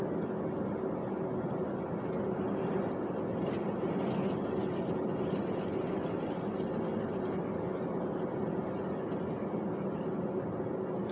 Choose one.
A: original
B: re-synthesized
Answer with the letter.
A